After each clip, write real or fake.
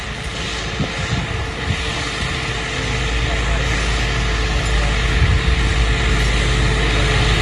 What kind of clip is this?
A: real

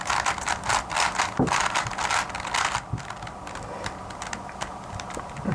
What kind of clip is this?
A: real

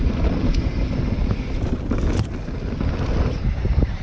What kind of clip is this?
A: real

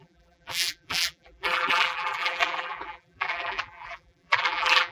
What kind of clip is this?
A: fake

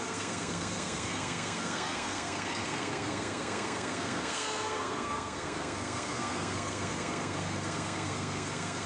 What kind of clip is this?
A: fake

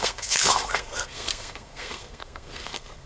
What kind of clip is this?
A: fake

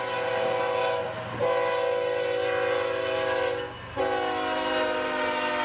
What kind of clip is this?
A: real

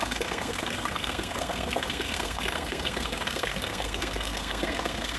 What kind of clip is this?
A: fake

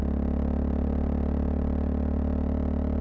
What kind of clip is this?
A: real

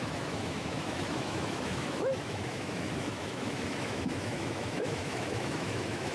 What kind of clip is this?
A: fake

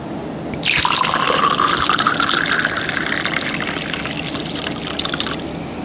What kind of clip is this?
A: real